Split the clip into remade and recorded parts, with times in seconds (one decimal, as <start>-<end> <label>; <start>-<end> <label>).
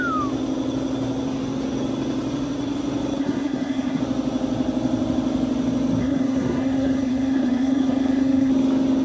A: 0.0-3.2 recorded; 3.2-4.0 remade; 4.0-6.0 recorded; 6.0-8.5 remade; 8.5-9.0 recorded